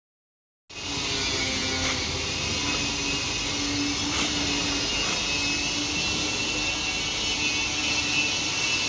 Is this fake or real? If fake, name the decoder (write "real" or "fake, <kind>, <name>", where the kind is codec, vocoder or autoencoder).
real